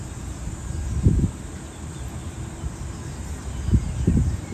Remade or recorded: recorded